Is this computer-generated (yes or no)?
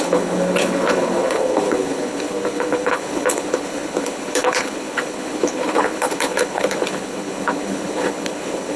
yes